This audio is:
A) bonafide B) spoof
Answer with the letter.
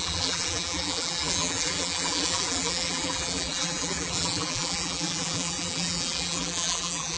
B